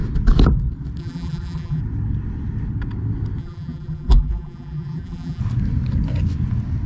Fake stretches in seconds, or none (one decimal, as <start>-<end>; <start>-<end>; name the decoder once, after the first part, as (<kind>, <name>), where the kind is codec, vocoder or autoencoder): 1.0-1.8 (vocoder, BigVGAN v2); 3.4-5.4